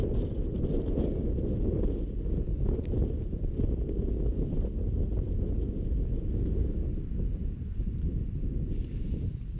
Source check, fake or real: real